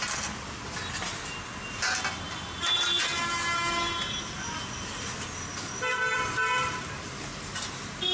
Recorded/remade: recorded